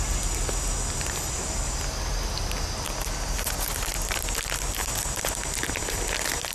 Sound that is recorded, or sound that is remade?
recorded